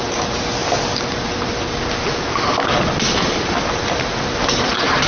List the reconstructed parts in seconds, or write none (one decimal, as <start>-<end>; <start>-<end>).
none